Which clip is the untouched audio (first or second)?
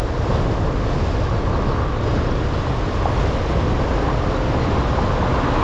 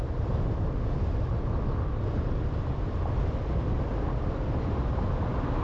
first